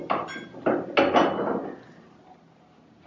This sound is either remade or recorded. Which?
recorded